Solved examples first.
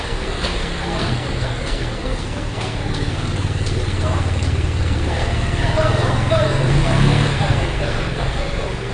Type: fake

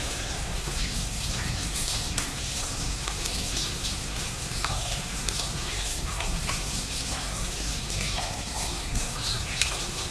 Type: fake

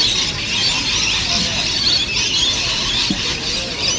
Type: real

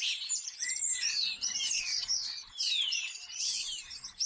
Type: fake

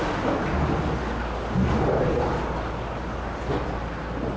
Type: real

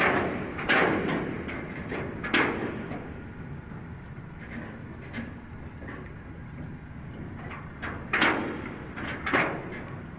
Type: real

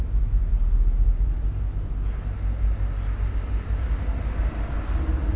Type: real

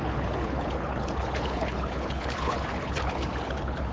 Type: fake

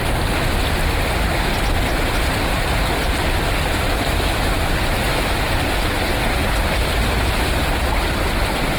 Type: real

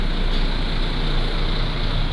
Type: real